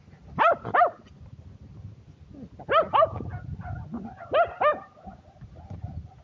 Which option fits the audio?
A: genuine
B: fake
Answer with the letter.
A